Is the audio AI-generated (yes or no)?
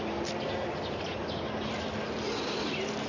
no